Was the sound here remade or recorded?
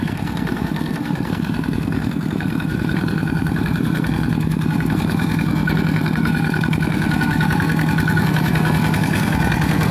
remade